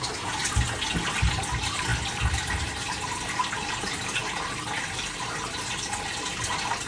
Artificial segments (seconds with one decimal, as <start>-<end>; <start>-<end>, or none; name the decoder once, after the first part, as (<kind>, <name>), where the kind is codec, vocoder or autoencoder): none